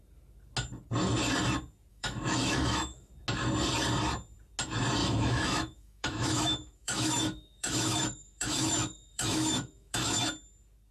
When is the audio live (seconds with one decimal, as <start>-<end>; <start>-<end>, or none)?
0.0-1.9; 3.1-5.0; 10.2-10.9